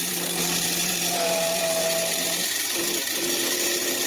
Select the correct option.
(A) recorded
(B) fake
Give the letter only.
B